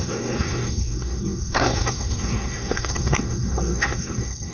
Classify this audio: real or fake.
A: fake